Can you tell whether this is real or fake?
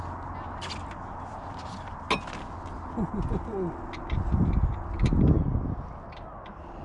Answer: real